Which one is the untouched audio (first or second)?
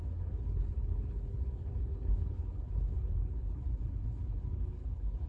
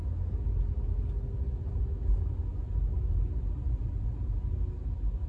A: second